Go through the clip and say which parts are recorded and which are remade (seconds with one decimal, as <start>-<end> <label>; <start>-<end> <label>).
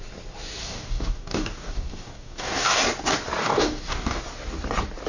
0.0-0.6 recorded; 0.6-2.8 remade; 2.8-3.4 recorded; 3.4-4.2 remade; 4.2-5.1 recorded